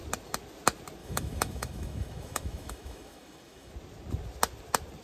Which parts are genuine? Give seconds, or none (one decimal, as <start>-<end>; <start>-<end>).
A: 0.0-1.0; 3.7-5.0